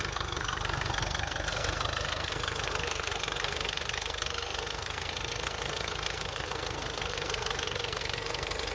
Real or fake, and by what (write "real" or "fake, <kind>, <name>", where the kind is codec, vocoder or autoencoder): fake, codec, SNAC